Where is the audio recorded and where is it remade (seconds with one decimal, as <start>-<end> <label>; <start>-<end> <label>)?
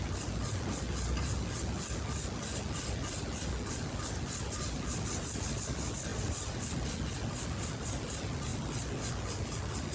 0.0-6.1 recorded; 6.1-6.6 remade; 6.6-9.9 recorded